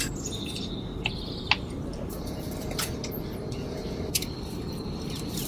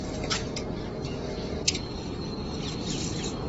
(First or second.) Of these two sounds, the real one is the second